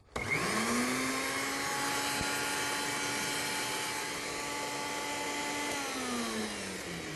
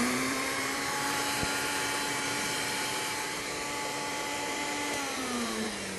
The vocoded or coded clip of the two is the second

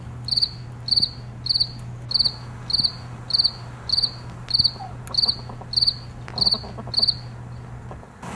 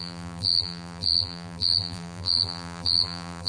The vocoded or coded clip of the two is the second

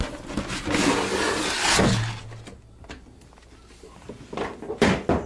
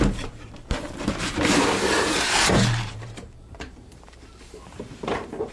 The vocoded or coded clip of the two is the second